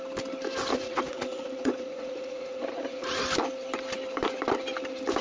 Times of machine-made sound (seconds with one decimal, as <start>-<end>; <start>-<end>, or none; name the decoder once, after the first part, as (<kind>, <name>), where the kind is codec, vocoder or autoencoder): 0.7-3.2 (vocoder, Vocos)